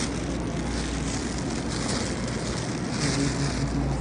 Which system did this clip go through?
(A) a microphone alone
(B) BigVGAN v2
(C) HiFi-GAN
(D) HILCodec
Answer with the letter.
A